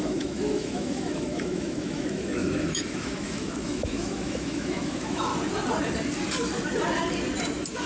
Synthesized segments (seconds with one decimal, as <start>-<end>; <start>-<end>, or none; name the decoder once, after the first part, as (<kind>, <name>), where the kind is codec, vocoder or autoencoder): 0.0-5.3 (autoencoder, DAC-VAE)